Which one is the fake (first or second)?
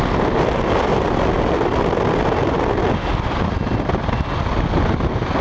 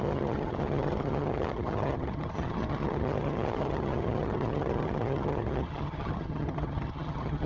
second